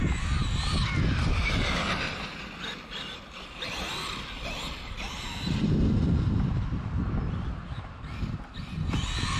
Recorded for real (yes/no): yes